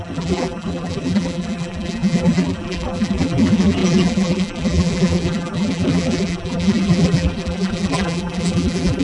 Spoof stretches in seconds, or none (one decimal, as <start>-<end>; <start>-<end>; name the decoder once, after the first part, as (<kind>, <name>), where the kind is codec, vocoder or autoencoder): 0.0-9.0 (vocoder, BigVGAN v2)